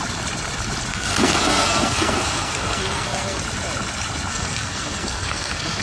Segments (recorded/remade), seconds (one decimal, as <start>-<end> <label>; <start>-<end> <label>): 0.0-0.9 recorded; 0.9-3.4 remade; 3.4-4.3 recorded; 4.3-5.8 remade